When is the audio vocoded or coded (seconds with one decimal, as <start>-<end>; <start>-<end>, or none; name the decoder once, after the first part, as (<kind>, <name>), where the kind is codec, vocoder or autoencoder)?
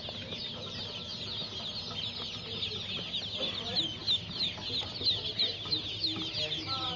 none